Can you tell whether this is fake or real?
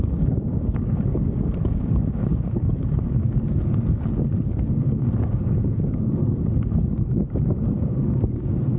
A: fake